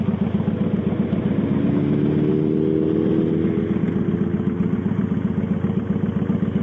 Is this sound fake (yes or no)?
no